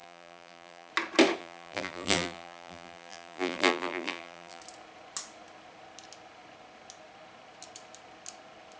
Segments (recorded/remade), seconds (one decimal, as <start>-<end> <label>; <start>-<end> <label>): 0.0-0.9 remade; 0.9-1.4 recorded; 1.4-4.6 remade; 4.6-8.8 recorded